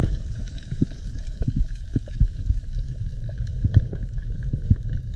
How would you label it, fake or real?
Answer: fake